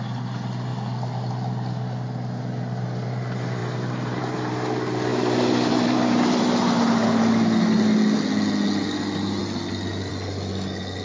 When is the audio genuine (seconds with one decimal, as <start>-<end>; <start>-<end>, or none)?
0.0-5.1; 6.4-11.0